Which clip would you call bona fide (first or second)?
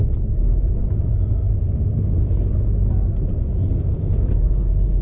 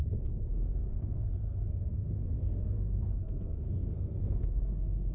first